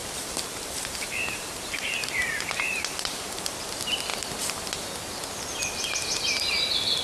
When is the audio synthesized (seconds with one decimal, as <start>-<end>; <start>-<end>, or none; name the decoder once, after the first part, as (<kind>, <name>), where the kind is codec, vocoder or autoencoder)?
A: 0.0-3.5 (vocoder, BigVGAN v2); 4.1-4.9